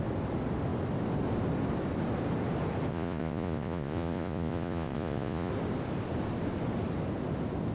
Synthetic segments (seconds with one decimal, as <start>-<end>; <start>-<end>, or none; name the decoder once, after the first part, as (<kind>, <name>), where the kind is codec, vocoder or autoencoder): 2.9-5.5 (vocoder, Vocos)

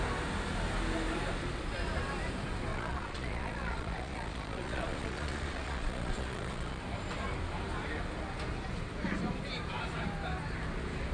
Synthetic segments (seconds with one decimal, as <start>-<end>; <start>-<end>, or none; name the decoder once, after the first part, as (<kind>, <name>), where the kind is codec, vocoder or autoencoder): 2.7-6.8 (vocoder, Vocos)